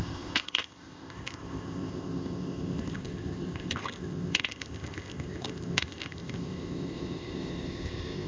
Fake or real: fake